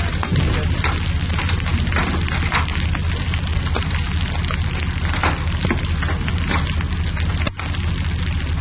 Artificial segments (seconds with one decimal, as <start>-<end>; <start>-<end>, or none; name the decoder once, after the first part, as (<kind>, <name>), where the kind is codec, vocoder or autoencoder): none